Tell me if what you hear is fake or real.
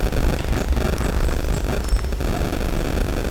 real